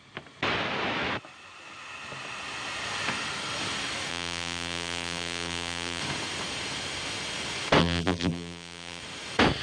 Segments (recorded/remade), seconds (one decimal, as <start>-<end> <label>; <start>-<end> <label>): 0.0-4.1 recorded; 4.1-6.0 remade; 6.0-7.8 recorded; 7.8-9.0 remade; 9.0-9.6 recorded